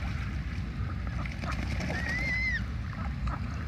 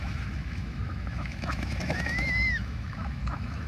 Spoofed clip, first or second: second